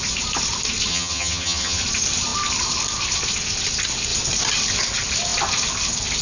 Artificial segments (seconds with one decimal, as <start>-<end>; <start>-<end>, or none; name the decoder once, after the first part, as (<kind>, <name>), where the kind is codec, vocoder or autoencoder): 0.9-1.8 (vocoder, HiFi-GAN)